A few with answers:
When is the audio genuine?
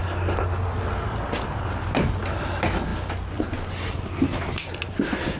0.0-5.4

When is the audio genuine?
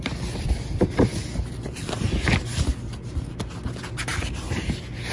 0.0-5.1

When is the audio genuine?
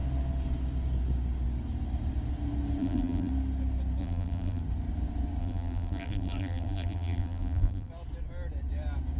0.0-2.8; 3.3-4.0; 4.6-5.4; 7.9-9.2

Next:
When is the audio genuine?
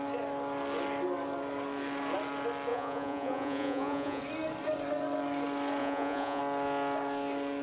0.0-2.7; 4.2-5.8; 6.4-7.6